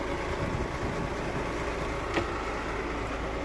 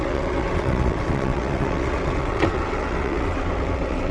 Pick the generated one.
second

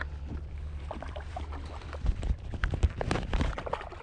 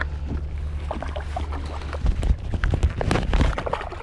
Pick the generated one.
first